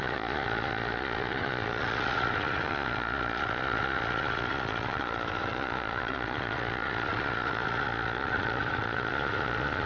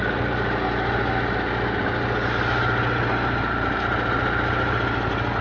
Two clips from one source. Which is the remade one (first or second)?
first